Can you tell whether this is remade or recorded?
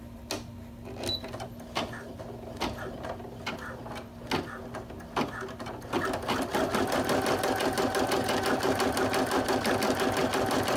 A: recorded